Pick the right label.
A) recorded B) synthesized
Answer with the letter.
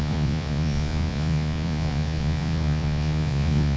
B